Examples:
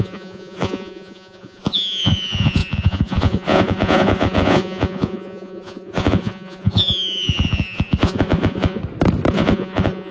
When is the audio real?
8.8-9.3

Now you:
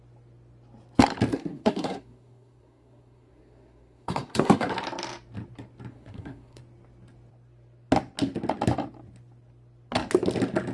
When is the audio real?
0.0-1.3; 4.7-5.9; 6.6-10.7

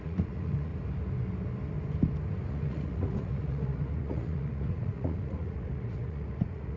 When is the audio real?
0.7-2.5

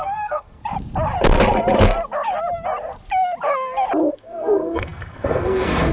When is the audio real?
0.6-4.1

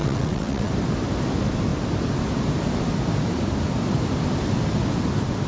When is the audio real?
0.7-5.5

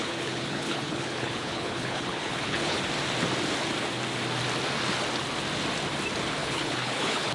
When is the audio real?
2.8-6.4